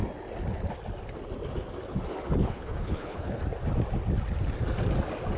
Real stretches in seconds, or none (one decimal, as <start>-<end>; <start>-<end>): 0.0-2.4; 3.4-5.4

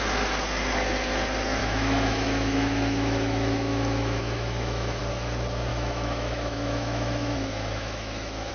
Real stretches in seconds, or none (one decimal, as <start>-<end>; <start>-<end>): 0.0-1.6; 5.0-5.7

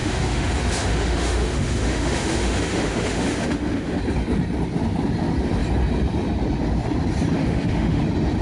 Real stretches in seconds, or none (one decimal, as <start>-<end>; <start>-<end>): 4.0-7.4; 8.0-8.4